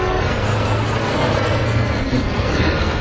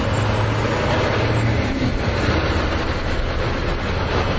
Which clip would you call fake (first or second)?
first